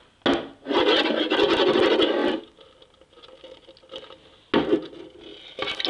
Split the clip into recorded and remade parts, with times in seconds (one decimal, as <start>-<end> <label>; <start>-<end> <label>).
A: 0.0-5.9 recorded